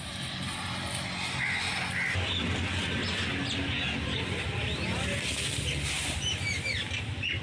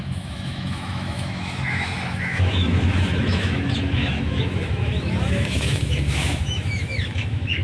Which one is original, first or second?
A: first